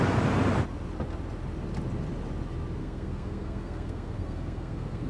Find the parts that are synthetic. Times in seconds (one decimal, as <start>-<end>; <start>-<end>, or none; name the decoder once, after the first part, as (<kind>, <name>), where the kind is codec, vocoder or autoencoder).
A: 2.8-5.1 (codec, SNAC)